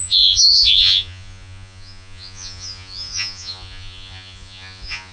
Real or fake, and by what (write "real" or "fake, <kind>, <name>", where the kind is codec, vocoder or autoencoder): fake, vocoder, Vocos